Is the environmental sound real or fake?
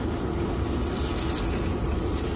real